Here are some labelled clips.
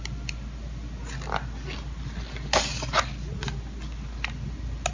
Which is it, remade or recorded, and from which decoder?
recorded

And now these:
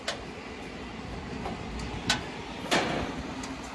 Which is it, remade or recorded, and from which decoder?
recorded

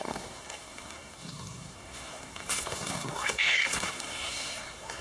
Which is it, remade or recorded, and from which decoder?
remade, codec, SNAC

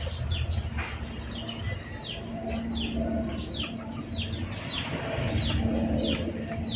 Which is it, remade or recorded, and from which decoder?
recorded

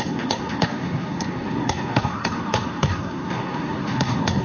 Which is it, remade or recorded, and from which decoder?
remade, codec, SNAC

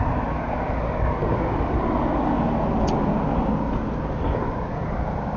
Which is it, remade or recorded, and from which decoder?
recorded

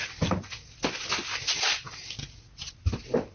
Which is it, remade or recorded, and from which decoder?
recorded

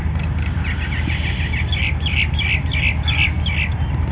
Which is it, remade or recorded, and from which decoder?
recorded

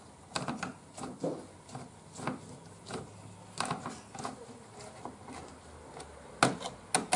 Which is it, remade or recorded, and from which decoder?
recorded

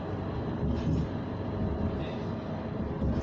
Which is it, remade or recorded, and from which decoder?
recorded